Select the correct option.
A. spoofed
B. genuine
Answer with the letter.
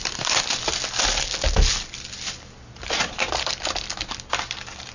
B